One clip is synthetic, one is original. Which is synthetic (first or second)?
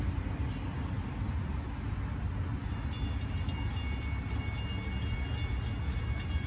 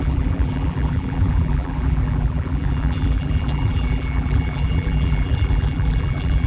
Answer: second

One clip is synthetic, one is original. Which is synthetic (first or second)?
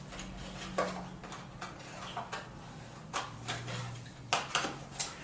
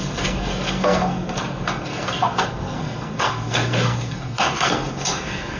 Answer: second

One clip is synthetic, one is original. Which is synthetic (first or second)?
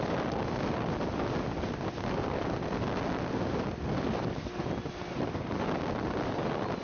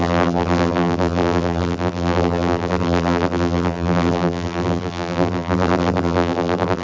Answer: second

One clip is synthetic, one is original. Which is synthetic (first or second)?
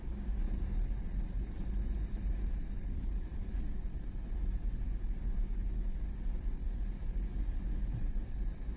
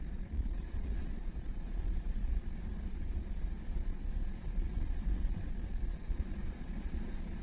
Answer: second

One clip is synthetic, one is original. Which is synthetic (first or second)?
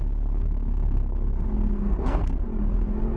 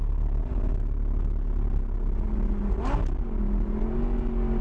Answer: first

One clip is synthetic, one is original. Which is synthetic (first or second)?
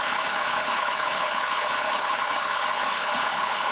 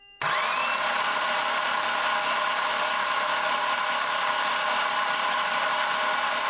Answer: first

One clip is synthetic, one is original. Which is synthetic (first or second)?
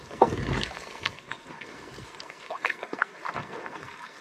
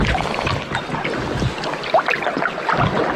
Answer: first